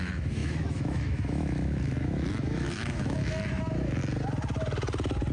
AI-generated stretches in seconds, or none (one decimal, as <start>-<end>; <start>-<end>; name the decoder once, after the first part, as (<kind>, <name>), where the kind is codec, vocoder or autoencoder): 0.0-4.0 (autoencoder, DAC-VAE)